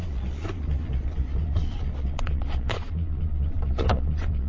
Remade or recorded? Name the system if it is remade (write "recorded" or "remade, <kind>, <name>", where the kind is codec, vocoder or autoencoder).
remade, vocoder, Vocos